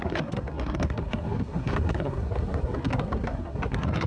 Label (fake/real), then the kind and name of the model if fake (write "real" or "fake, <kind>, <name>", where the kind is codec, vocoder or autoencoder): fake, codec, SNAC